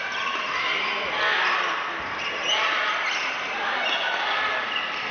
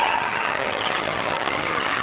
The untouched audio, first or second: first